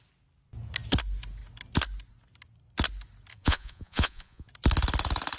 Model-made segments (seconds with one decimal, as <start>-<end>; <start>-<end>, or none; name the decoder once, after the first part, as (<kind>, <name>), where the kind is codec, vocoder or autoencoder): 3.3-4.5 (vocoder, Vocos)